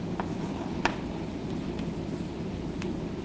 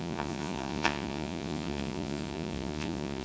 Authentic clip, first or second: first